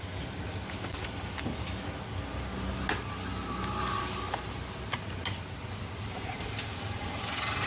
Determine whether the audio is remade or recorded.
recorded